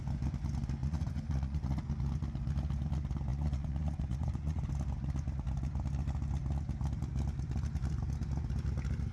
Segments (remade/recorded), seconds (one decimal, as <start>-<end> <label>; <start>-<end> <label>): 0.0-0.8 recorded; 0.8-1.9 remade; 1.9-3.3 recorded; 3.3-4.7 remade; 4.7-9.1 recorded